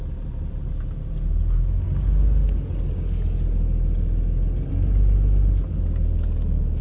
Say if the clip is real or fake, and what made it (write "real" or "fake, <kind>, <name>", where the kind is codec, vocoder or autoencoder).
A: real